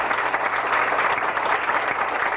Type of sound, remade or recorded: recorded